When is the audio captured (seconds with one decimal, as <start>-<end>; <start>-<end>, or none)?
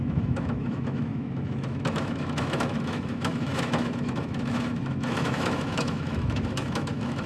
none